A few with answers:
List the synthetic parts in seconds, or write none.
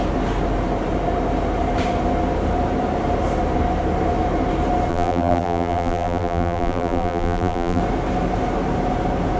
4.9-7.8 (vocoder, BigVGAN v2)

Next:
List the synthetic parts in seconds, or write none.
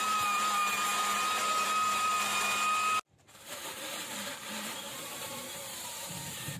0.0-0.6 (vocoder, BigVGAN v2); 1.6-2.1; 3.5-6.6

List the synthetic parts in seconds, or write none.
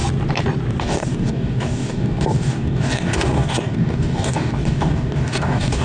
0.8-5.8 (codec, DAC)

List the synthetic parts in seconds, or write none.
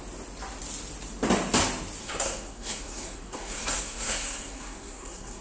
2.0-5.4 (codec, SNAC)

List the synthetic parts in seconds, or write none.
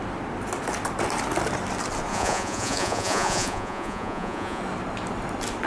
2.1-4.6 (vocoder, Vocos)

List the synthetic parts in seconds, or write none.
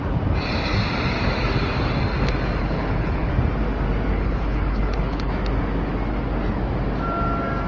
2.6-3.3 (codec, HILCodec); 4.1-5.3